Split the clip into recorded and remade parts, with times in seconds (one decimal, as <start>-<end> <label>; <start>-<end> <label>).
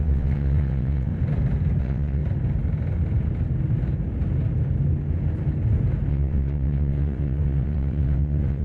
0.0-1.1 remade; 1.1-1.8 recorded; 1.8-2.2 remade; 2.2-6.1 recorded; 6.1-8.6 remade